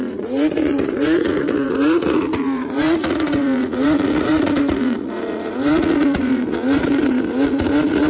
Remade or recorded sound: remade